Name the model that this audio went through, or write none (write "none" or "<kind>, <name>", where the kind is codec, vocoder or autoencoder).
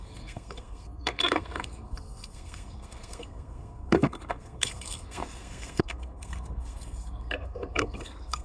codec, SNAC